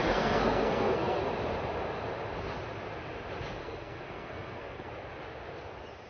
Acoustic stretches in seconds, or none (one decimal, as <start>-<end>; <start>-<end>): 1.2-3.6; 4.9-6.1